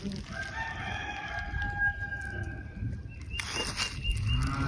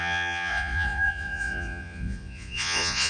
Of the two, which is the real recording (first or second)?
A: first